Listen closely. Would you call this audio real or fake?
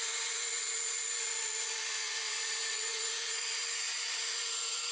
fake